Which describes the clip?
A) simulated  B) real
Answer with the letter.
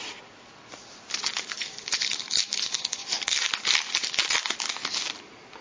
B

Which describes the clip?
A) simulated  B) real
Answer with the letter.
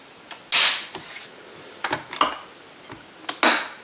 B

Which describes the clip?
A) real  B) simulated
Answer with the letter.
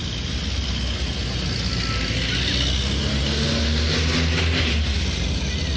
A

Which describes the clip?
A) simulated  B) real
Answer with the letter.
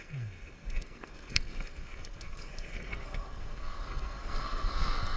A